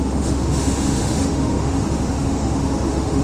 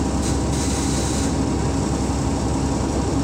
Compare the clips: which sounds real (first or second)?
second